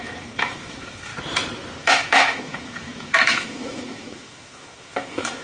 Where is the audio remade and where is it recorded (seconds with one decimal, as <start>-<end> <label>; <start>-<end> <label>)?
0.0-1.1 remade; 1.1-1.8 recorded; 1.8-5.4 remade